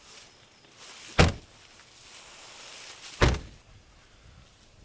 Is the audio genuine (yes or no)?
yes